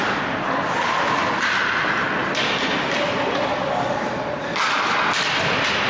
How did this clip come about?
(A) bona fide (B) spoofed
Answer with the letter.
A